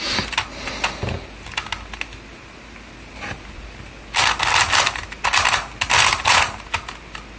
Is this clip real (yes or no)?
yes